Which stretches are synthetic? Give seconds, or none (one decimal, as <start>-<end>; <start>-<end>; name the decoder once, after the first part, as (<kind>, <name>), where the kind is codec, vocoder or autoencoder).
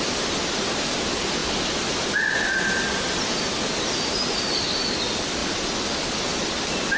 none